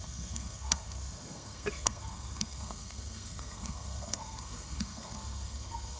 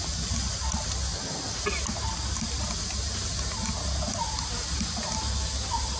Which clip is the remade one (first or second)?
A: first